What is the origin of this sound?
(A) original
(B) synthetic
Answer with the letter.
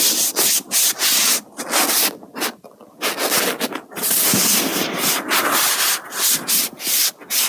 A